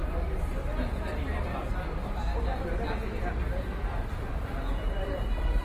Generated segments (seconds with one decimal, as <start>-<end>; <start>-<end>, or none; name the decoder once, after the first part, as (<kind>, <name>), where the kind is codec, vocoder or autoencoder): 3.4-5.6 (vocoder, BigVGAN v2)